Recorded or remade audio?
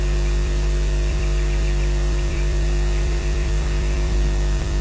remade